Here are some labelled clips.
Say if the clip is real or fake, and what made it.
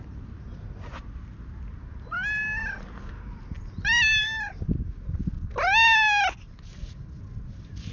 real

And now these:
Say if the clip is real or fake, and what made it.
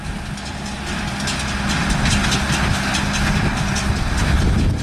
real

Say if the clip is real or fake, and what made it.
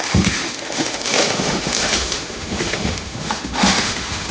fake, autoencoder, DAC-VAE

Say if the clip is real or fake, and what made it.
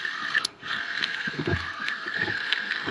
fake, codec, SNAC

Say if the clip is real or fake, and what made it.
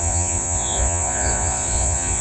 fake, vocoder, Vocos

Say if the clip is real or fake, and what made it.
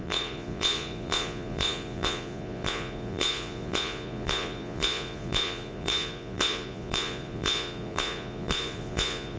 fake, vocoder, Vocos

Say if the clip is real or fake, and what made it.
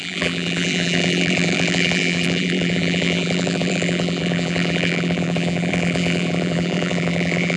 fake, vocoder, BigVGAN v2